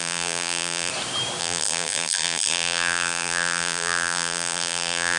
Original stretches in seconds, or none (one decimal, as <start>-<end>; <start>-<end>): 0.9-1.4